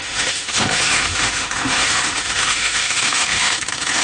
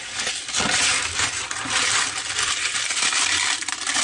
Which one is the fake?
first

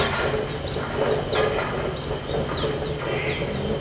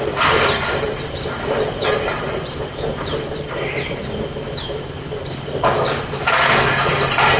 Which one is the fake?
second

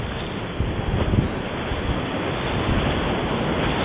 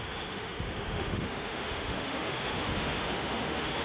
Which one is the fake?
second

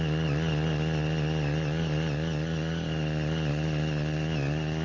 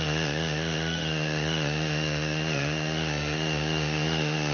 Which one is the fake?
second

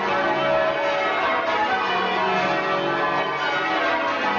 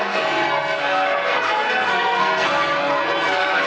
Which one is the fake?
second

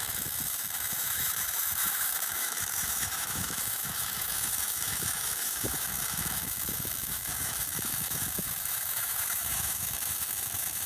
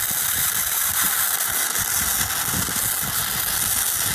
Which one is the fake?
first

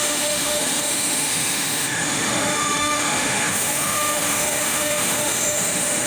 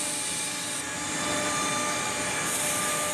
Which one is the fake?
first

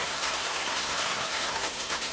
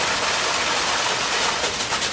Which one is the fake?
first